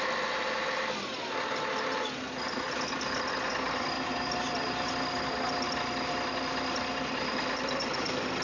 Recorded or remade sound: recorded